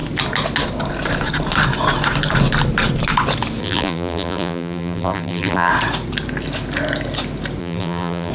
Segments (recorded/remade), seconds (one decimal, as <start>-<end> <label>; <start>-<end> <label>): 0.0-3.6 recorded; 3.6-5.7 remade; 5.7-7.6 recorded; 7.6-8.3 remade